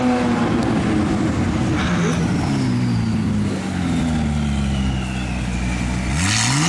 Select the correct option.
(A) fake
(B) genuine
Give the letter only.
B